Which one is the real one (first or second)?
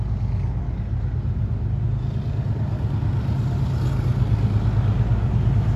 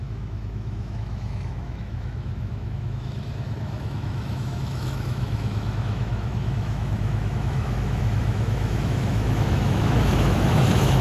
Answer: first